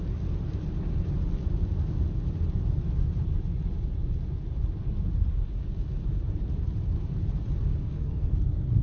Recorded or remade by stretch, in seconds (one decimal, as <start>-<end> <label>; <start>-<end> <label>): 0.0-7.9 recorded; 7.9-8.8 remade